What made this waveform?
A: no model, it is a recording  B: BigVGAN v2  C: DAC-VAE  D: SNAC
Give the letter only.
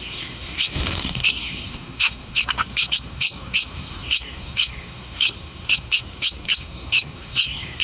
D